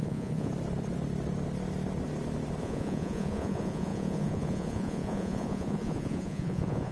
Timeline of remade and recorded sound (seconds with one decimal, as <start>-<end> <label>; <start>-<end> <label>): 0.0-0.5 remade; 0.5-2.6 recorded; 2.6-6.9 remade

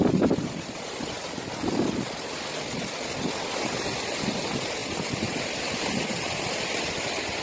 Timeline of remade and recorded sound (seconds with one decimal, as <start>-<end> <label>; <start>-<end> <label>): 0.0-7.4 recorded

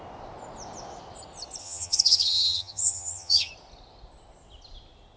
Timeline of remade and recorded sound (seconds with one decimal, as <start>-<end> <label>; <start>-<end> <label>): 0.0-1.6 recorded; 1.6-3.5 remade; 3.5-5.2 recorded